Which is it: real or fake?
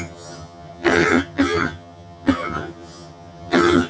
fake